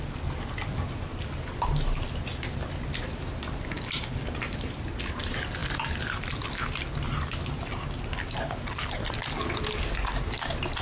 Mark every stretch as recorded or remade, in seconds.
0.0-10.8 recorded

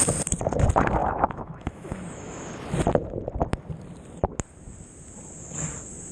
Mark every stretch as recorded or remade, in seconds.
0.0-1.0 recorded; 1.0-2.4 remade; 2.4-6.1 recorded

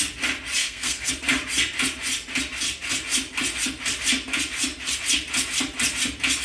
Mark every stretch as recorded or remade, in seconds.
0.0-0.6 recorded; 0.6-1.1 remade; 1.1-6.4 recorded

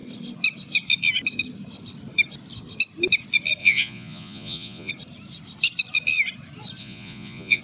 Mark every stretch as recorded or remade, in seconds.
0.0-3.6 recorded; 3.6-4.9 remade; 4.9-6.8 recorded; 6.8-7.6 remade

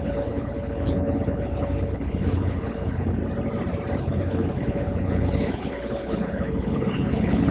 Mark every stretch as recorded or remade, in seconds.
0.0-3.2 remade; 3.2-4.0 recorded; 4.0-7.5 remade